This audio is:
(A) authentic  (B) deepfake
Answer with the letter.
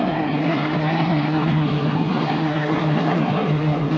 B